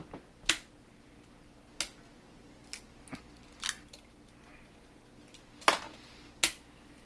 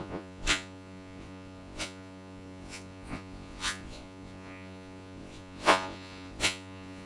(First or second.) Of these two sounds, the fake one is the second